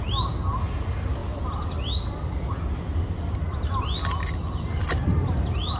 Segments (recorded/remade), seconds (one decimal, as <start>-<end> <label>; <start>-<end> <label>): 0.0-5.8 recorded